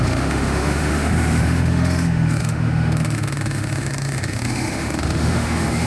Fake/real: fake